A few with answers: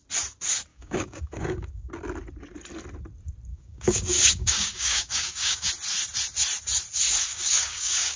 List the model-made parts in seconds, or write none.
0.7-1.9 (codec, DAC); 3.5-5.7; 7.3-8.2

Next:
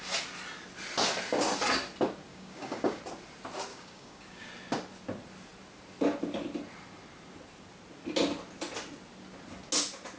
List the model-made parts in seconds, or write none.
2.3-3.0 (codec, DAC); 3.7-4.5

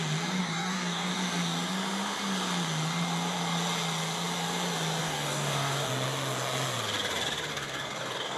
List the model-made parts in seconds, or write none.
0.4-1.1 (codec, DAC); 5.0-5.9; 7.5-8.4